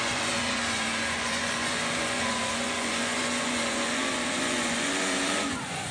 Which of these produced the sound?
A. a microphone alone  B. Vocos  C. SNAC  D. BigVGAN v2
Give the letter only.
B